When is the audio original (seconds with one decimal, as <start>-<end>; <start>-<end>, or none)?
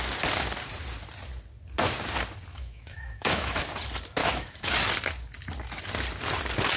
0.0-2.5; 3.6-4.2; 4.7-6.8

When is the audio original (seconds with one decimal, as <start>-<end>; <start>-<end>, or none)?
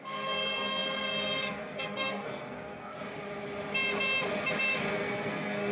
2.9-4.9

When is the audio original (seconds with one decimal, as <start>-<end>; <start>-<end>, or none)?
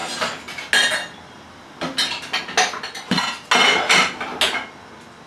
0.0-5.3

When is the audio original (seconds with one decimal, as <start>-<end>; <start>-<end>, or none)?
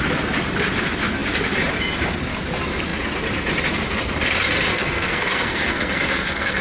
0.0-4.7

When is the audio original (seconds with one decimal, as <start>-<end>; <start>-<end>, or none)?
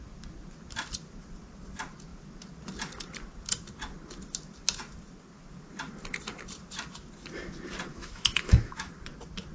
0.0-7.9; 8.9-9.5